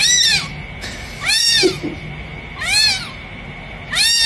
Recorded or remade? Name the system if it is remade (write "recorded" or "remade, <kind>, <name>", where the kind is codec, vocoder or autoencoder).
recorded